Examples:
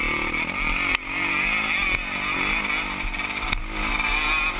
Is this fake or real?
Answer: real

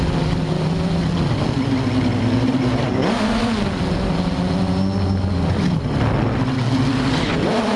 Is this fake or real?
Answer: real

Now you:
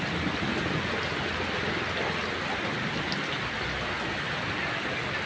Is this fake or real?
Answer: real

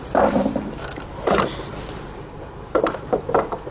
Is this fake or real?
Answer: fake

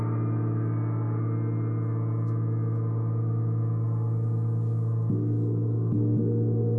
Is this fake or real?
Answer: real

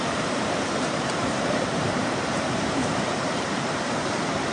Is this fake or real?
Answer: fake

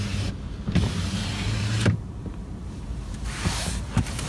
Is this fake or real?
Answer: fake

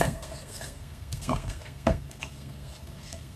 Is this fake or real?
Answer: fake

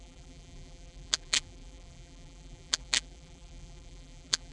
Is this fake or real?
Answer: fake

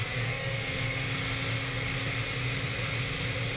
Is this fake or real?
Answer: real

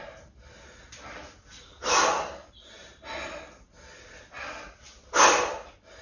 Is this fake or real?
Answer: real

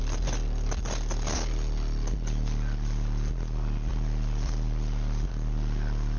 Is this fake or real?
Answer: real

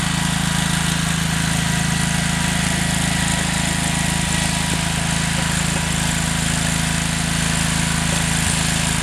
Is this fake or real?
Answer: real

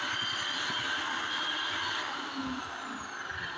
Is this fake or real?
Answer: real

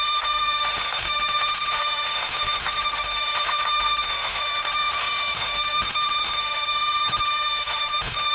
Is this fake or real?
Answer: fake